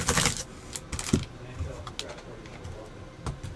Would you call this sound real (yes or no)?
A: yes